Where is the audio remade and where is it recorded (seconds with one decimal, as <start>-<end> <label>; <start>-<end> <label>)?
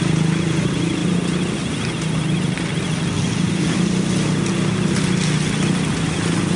0.0-6.6 recorded